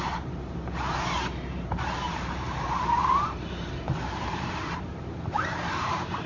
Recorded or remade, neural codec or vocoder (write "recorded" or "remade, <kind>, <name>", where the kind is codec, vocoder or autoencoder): remade, vocoder, BigVGAN v2